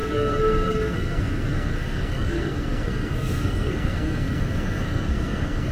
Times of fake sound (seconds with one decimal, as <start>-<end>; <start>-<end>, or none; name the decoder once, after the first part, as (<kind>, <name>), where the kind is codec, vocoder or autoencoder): 0.0-5.7 (codec, SNAC)